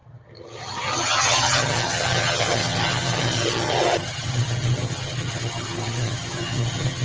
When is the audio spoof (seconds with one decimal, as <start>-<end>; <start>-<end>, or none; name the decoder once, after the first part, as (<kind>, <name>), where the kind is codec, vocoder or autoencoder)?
0.0-7.0 (vocoder, HiFi-GAN)